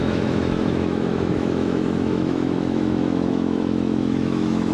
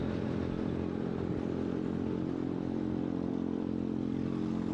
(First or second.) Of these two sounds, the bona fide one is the second